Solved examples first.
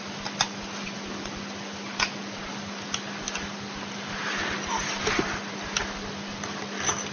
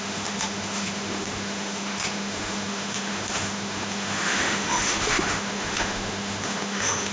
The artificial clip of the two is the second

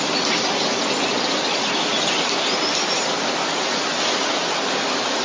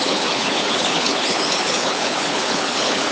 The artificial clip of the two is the second